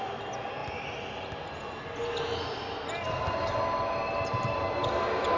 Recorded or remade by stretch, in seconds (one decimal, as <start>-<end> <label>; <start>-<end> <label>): 0.0-5.4 recorded